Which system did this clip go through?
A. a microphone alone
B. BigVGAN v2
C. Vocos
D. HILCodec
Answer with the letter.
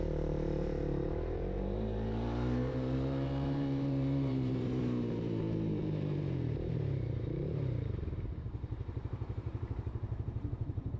B